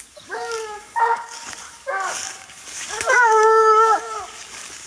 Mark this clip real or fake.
fake